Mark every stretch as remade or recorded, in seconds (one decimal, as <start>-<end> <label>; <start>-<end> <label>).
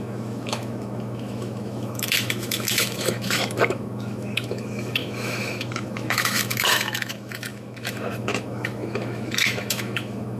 0.0-10.4 remade